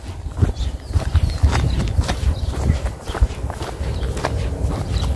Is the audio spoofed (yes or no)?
yes